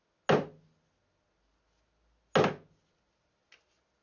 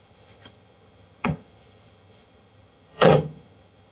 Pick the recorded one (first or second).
first